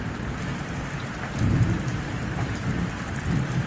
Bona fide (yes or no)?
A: no